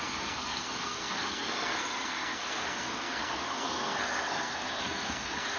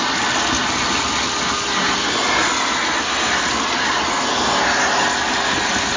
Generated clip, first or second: first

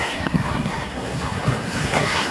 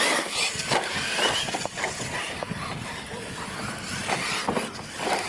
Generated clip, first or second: first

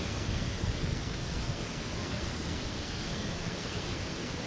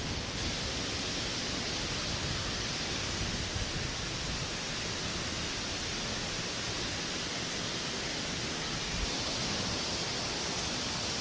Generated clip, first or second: first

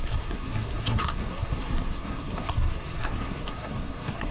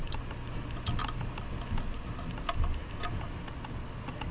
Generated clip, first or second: first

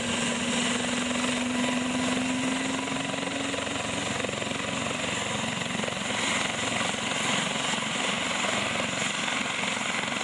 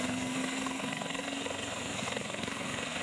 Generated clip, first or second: second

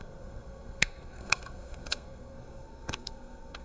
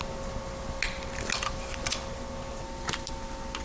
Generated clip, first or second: first